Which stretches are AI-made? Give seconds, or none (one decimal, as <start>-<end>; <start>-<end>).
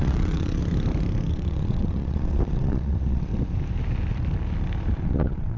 0.0-0.6; 1.3-3.3; 5.0-5.6